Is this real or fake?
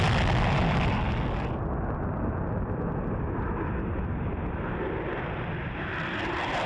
real